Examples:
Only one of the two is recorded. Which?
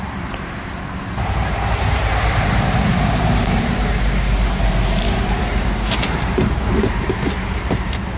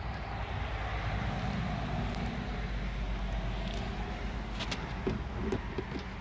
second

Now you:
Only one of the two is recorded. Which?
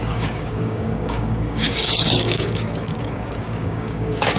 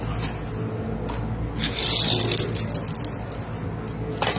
second